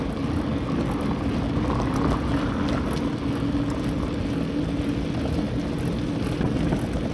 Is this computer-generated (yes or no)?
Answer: no